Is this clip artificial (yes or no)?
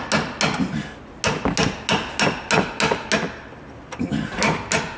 no